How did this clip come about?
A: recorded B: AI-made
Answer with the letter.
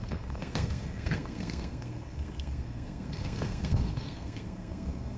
B